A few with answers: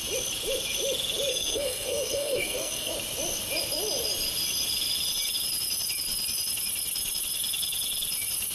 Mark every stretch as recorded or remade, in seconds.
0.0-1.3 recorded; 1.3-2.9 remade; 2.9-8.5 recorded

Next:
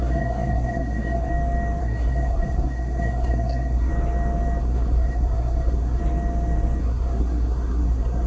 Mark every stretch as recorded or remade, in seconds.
0.0-1.3 remade; 1.3-1.8 recorded; 1.8-3.9 remade; 3.9-4.6 recorded; 4.6-6.0 remade; 6.0-6.8 recorded; 6.8-8.3 remade

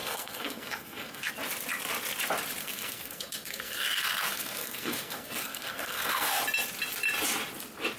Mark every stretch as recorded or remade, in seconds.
0.0-1.3 remade; 1.3-2.6 recorded; 2.6-6.4 remade; 6.4-8.0 recorded